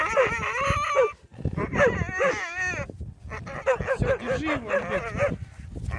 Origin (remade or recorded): recorded